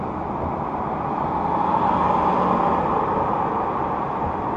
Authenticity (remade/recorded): recorded